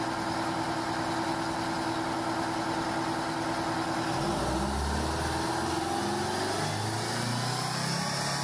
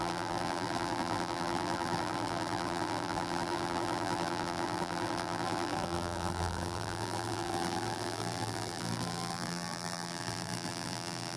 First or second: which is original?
first